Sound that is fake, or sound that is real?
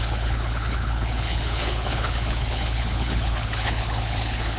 fake